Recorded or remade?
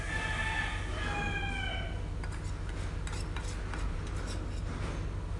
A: recorded